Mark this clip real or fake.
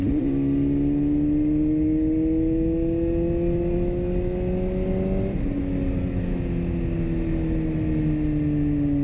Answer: real